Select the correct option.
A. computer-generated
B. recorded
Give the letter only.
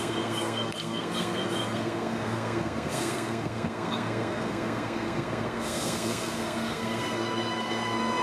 A